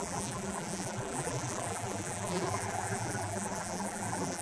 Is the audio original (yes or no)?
no